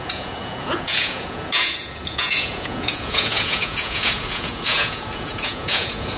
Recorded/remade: remade